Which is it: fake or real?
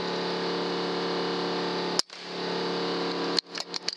real